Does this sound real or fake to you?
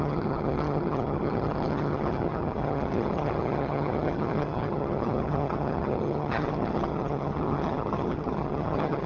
fake